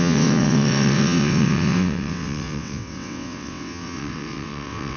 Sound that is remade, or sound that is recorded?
remade